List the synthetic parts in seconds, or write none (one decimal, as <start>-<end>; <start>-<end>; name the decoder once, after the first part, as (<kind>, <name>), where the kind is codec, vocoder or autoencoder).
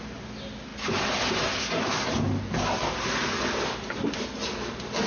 none